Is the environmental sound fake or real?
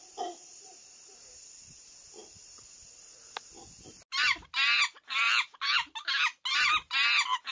real